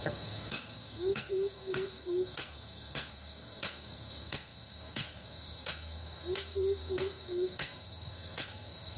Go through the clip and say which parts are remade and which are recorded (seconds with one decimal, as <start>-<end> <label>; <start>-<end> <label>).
0.0-9.0 remade